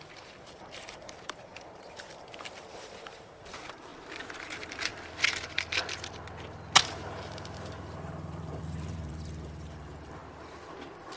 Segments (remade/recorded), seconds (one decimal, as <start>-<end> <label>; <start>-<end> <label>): 0.0-3.9 remade; 3.9-4.4 recorded; 4.4-4.9 remade; 4.9-6.8 recorded; 6.8-10.2 remade; 10.2-11.2 recorded